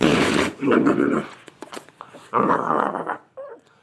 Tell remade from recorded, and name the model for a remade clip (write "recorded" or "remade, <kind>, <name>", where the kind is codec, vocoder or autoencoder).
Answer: remade, vocoder, Vocos